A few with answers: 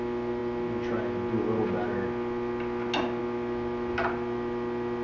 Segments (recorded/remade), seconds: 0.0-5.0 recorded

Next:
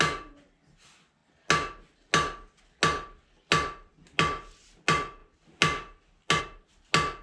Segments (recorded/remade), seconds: 0.0-7.2 recorded

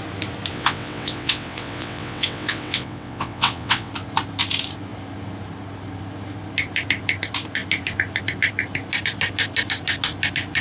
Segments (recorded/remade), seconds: 0.0-0.5 recorded; 0.5-3.9 remade; 3.9-10.6 recorded

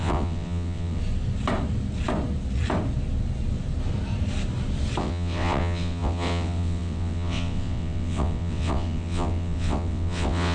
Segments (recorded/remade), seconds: 0.0-1.0 remade; 1.0-5.0 recorded; 5.0-10.5 remade

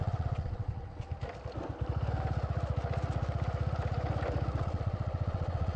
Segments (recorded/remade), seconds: 0.0-1.1 remade; 1.1-4.6 recorded; 4.6-5.8 remade

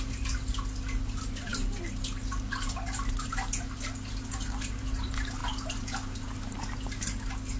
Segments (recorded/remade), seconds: 0.0-7.6 recorded

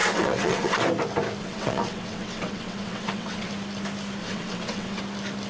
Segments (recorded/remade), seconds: 0.0-0.8 remade; 0.8-1.4 recorded; 1.4-3.5 remade; 3.5-4.2 recorded; 4.2-5.0 remade; 5.0-5.5 recorded

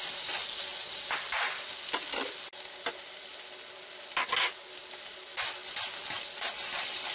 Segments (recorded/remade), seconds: 0.0-7.1 recorded